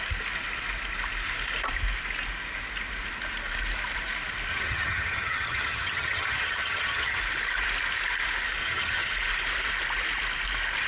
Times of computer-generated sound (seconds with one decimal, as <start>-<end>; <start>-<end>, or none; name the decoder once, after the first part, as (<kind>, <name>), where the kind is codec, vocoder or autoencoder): 4.5-7.2 (vocoder, HiFi-GAN); 8.6-9.1